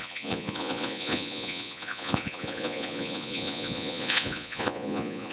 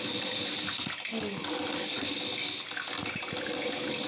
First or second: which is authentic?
second